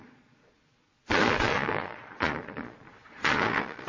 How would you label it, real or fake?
fake